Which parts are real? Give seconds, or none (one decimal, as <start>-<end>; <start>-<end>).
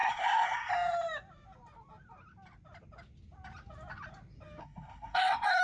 0.7-4.6